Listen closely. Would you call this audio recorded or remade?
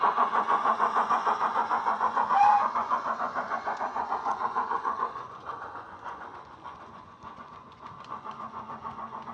remade